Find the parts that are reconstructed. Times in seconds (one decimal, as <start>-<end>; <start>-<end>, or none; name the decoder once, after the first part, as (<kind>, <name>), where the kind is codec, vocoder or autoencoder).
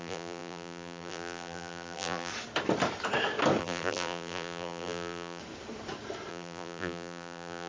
0.0-2.3 (vocoder, BigVGAN v2); 3.6-5.4; 6.3-7.7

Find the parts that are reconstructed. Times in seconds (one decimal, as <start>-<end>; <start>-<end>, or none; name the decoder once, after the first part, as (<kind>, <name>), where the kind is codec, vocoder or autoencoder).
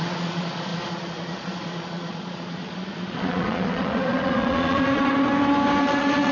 0.0-5.3 (vocoder, Vocos); 5.8-6.3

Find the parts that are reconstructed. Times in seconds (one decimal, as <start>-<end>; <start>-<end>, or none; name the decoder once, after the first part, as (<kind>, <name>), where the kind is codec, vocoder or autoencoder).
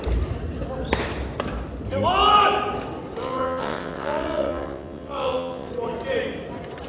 3.2-5.7 (vocoder, WaveNeXt)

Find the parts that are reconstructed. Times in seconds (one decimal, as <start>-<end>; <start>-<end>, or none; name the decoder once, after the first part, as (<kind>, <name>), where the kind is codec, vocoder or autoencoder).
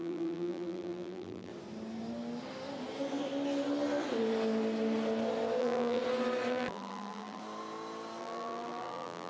0.0-1.5 (vocoder, BigVGAN v2); 5.6-6.0; 6.5-7.4; 8.2-9.3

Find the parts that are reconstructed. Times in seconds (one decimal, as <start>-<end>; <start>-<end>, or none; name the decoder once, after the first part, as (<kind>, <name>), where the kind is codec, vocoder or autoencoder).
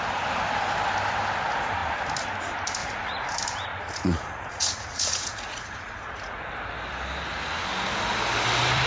2.8-3.3 (vocoder, Vocos); 3.7-6.5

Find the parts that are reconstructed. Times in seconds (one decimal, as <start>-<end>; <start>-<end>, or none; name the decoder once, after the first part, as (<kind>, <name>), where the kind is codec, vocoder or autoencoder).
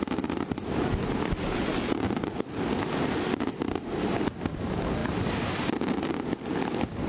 none